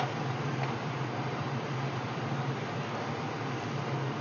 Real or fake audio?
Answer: fake